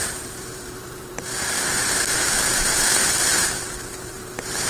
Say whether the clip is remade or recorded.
remade